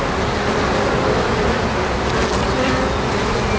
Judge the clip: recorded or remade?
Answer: recorded